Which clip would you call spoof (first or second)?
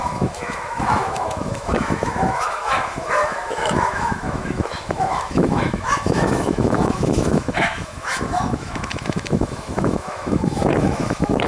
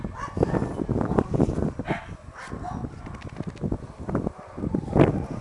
first